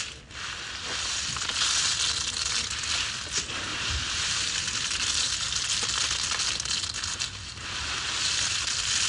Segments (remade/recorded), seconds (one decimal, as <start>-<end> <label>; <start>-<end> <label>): 0.0-3.7 recorded; 3.7-5.6 remade; 5.6-9.1 recorded